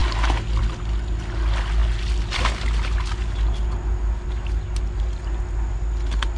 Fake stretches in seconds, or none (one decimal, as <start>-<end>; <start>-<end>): none